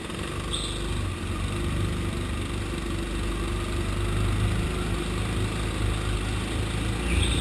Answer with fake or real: real